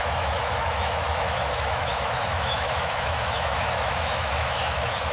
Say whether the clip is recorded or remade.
remade